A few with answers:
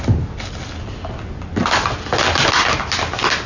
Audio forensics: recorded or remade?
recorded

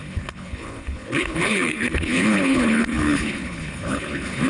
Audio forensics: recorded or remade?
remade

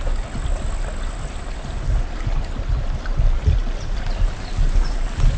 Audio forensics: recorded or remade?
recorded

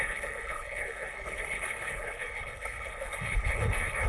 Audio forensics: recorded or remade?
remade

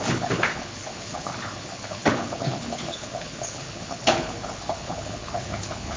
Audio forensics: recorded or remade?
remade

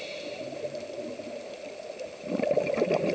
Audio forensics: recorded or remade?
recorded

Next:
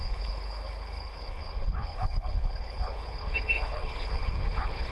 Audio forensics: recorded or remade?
remade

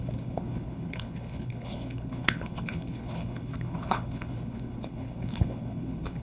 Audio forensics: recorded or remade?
remade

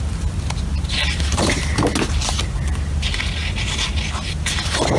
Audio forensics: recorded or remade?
recorded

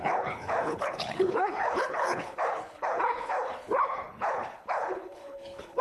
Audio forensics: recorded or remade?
remade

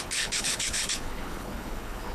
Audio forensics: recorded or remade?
remade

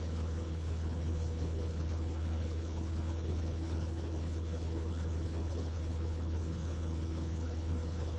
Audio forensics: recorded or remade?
remade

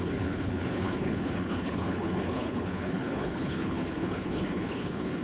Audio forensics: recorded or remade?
remade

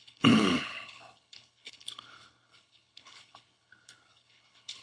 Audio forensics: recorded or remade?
remade